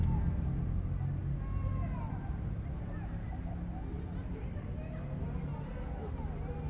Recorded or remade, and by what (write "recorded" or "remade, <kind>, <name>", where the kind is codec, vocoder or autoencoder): recorded